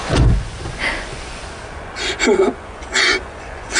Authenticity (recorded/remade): remade